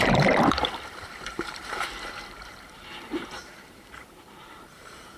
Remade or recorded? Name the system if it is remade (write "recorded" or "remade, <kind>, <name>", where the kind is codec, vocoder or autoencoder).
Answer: remade, vocoder, BigVGAN v2